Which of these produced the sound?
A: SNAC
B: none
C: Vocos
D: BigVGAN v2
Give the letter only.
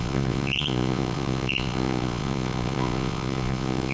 C